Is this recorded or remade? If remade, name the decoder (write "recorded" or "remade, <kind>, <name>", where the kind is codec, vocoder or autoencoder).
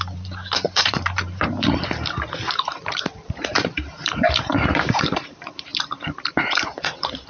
remade, vocoder, BigVGAN v2